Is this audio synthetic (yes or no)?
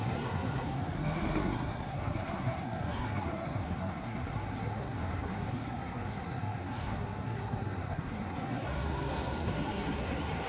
yes